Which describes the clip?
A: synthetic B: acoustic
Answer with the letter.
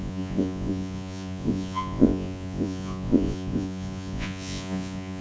A